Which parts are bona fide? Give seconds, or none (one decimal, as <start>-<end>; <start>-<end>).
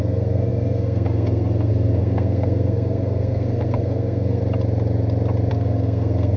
4.4-5.5